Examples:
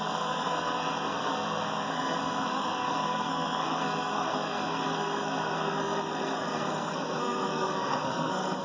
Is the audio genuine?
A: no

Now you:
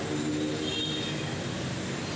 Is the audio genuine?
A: yes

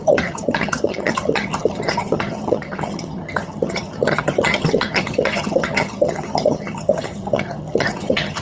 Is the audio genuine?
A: no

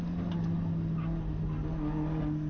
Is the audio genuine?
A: yes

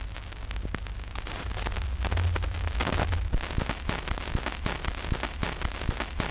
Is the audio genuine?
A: yes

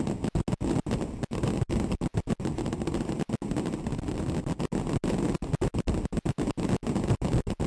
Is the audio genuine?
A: yes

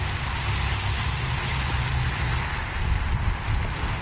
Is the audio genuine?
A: yes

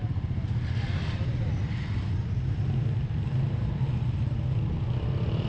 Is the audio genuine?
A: yes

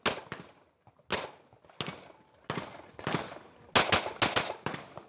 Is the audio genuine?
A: yes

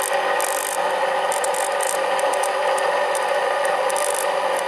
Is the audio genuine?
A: yes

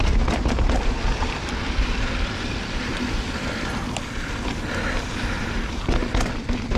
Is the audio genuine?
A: no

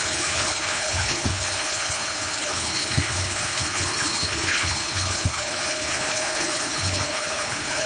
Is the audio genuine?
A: no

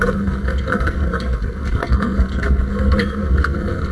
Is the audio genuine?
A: no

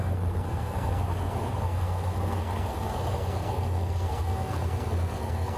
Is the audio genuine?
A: no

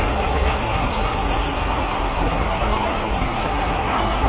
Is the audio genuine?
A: no